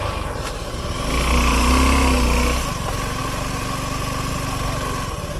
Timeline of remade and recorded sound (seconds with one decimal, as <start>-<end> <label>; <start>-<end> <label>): 0.0-5.4 recorded